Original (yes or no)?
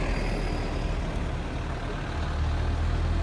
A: yes